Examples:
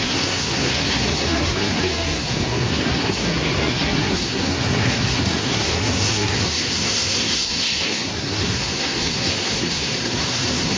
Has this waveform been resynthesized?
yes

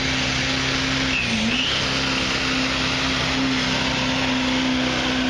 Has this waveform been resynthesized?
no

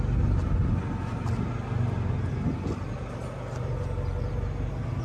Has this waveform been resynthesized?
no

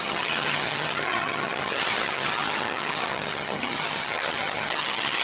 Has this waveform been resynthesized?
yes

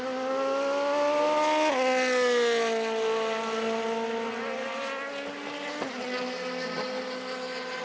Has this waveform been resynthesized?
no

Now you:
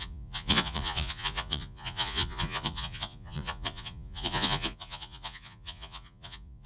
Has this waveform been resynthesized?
yes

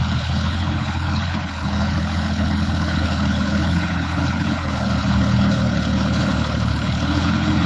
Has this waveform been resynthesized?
yes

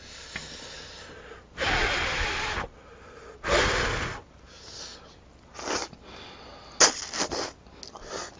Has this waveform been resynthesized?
no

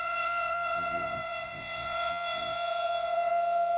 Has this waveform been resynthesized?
yes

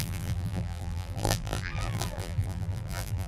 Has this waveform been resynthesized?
yes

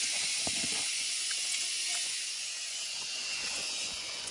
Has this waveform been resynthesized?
yes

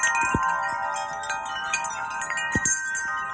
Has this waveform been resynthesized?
no